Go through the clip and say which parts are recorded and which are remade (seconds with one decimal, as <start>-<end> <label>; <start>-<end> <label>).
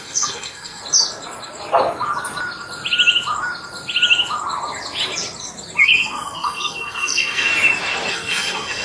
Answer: 0.0-0.8 remade; 0.8-5.8 recorded; 5.8-7.5 remade; 7.5-8.1 recorded; 8.1-8.8 remade